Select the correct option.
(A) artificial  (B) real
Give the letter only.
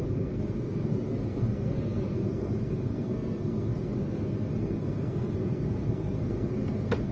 A